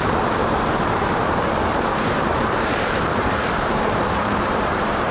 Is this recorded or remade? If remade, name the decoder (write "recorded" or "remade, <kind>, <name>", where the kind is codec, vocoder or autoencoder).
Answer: remade, vocoder, BigVGAN v2